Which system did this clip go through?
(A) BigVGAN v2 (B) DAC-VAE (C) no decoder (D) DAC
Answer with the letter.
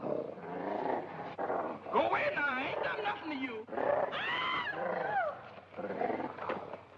A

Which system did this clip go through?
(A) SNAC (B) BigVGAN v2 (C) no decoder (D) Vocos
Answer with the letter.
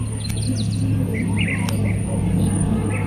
C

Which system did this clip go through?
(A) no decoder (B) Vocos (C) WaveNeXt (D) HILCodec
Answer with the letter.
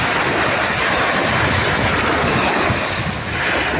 A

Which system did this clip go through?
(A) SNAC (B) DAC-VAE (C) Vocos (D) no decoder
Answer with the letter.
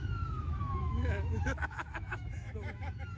B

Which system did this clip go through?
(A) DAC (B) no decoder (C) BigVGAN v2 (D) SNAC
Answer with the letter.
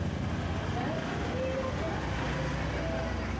B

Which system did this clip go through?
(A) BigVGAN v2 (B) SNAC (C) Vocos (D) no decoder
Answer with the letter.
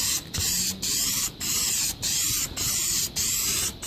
A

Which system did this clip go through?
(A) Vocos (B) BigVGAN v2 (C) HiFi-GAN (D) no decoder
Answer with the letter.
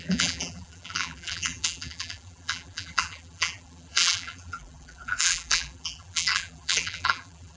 B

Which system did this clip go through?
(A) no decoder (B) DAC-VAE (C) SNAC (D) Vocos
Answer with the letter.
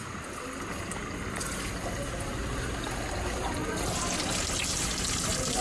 A